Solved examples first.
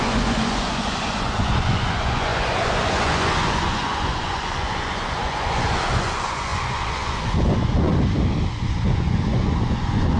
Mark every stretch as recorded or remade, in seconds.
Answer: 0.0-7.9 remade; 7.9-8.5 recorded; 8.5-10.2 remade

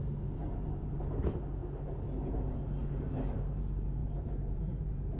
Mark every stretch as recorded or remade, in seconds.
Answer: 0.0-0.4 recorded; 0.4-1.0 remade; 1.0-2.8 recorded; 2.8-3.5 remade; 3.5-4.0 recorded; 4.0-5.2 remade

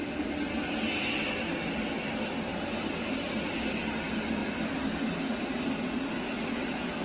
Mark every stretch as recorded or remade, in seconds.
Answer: 0.0-2.5 recorded; 2.5-3.5 remade; 3.5-4.4 recorded; 4.4-5.9 remade; 5.9-7.0 recorded